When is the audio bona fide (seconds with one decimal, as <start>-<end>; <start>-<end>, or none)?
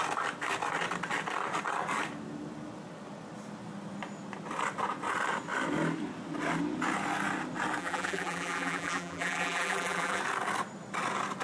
0.0-7.8; 10.2-11.4